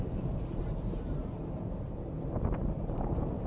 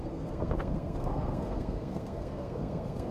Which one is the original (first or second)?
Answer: first